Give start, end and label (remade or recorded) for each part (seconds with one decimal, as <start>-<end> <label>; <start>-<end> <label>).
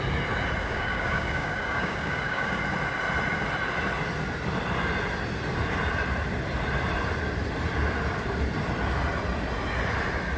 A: 0.0-0.6 recorded; 0.6-2.6 remade; 2.6-10.4 recorded